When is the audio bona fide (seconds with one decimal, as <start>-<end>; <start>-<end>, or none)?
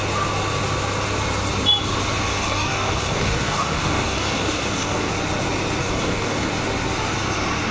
0.0-2.3; 5.1-5.8; 6.5-7.7